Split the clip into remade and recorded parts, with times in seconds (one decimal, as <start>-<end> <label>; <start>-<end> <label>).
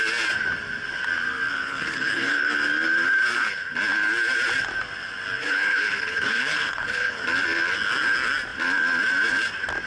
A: 0.0-1.5 recorded; 1.5-2.5 remade; 2.5-5.4 recorded; 5.4-7.2 remade; 7.2-9.9 recorded